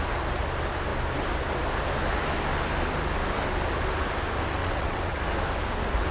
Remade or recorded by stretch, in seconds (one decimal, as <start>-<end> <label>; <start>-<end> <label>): 0.0-4.6 recorded; 4.6-5.2 remade; 5.2-6.1 recorded